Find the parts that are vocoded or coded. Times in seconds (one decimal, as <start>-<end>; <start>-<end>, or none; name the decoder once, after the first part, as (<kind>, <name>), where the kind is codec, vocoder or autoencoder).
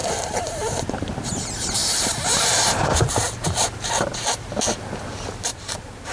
0.0-0.8 (vocoder, BigVGAN v2); 1.8-3.9; 5.5-6.1